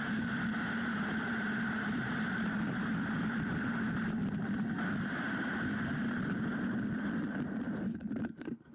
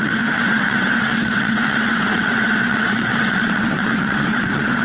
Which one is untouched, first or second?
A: first